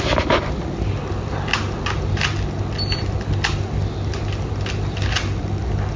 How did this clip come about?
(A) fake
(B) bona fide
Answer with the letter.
B